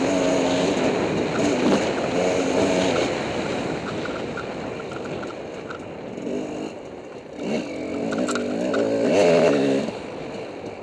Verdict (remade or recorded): recorded